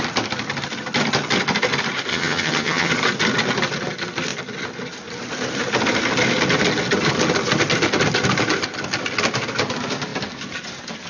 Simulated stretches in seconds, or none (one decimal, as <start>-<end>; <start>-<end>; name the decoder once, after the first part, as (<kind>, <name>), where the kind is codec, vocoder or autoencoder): 2.1-2.9 (vocoder, HiFi-GAN)